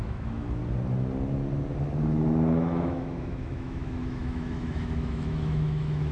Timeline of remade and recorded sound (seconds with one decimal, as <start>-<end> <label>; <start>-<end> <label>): 0.0-0.6 remade; 0.6-2.8 recorded; 2.8-6.1 remade